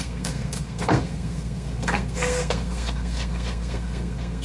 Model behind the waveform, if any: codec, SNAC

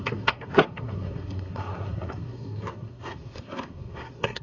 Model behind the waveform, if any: codec, SNAC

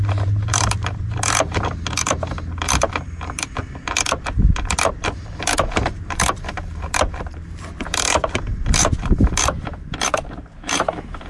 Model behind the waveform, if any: vocoder, BigVGAN v2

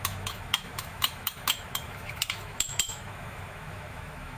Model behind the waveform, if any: autoencoder, DAC-VAE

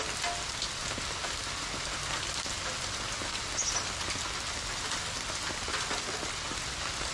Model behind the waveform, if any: none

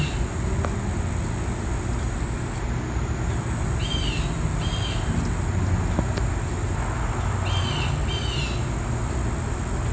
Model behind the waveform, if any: none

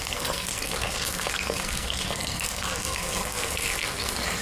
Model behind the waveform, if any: codec, SNAC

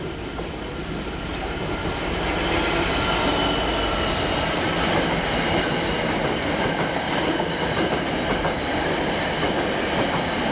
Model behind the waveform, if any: none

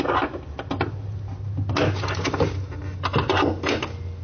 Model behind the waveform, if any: none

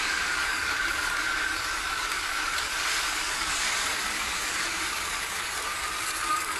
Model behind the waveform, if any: codec, DAC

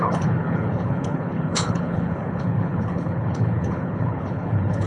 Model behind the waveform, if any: codec, HILCodec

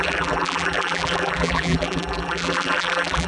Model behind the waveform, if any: vocoder, BigVGAN v2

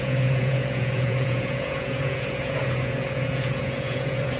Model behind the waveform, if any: vocoder, Vocos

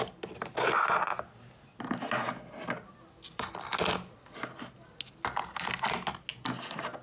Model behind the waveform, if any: none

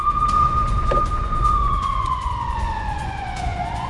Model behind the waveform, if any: vocoder, Vocos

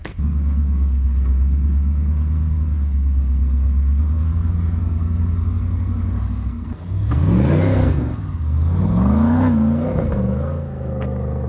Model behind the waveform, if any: codec, SNAC